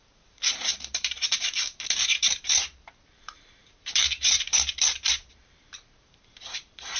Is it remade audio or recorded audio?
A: remade